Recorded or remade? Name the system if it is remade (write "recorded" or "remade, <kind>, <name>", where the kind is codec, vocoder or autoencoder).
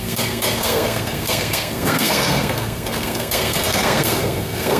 remade, codec, SNAC